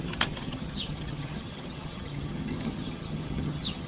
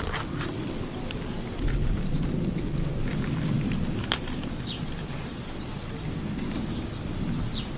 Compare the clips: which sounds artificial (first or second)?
first